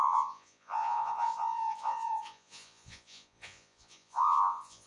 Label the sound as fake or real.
fake